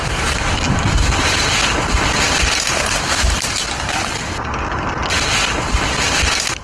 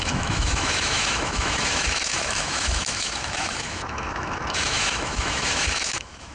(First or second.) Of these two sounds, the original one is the first